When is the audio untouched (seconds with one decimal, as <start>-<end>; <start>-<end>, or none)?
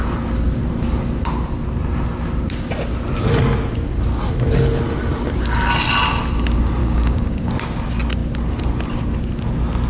0.0-6.8; 7.5-9.9